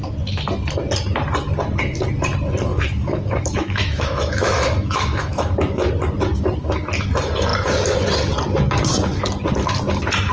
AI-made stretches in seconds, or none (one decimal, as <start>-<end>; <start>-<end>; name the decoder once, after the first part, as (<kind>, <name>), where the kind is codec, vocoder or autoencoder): 2.7-5.9 (autoencoder, DAC-VAE)

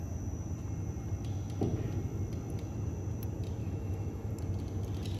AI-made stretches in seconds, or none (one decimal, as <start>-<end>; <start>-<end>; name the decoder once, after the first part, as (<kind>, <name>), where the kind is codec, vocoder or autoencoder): 3.6-4.3 (autoencoder, DAC-VAE)

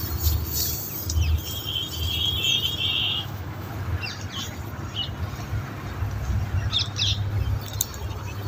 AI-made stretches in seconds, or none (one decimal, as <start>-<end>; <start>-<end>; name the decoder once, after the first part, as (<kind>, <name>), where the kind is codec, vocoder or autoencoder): 3.0-3.7 (autoencoder, DAC-VAE)

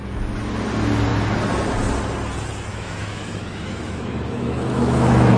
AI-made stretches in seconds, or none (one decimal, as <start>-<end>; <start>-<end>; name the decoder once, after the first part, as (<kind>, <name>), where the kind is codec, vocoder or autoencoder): 2.7-5.4 (autoencoder, DAC-VAE)

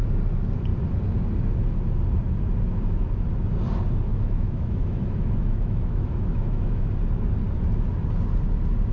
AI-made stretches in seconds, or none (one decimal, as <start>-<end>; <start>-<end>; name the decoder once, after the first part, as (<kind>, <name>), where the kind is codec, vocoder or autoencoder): 4.1-6.9 (autoencoder, DAC-VAE)